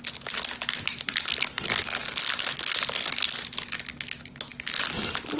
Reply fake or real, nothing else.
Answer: real